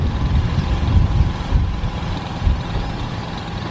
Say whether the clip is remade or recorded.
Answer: remade